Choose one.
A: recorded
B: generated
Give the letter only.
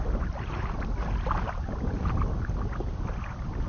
A